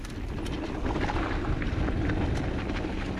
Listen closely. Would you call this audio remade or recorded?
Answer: recorded